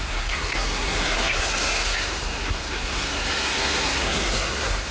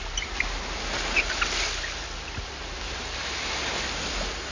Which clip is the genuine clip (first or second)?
second